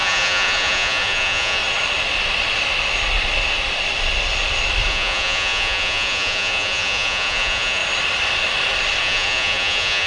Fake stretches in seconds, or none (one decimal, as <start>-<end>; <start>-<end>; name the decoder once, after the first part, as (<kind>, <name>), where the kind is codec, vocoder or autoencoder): 0.0-1.6 (vocoder, Vocos); 4.9-7.8; 9.0-10.1